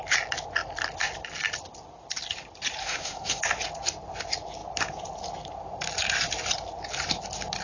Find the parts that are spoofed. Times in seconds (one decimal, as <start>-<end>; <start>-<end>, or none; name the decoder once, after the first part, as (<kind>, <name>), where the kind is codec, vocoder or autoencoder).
2.8-3.4 (autoencoder, DAC-VAE)